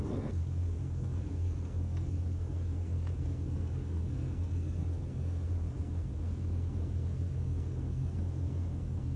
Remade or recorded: remade